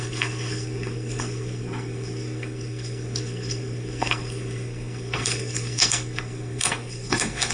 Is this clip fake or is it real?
fake